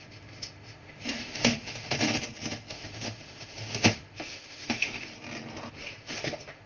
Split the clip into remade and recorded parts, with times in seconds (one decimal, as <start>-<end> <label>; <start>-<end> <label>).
0.0-1.9 remade; 1.9-2.7 recorded; 2.7-5.1 remade; 5.1-5.7 recorded; 5.7-6.7 remade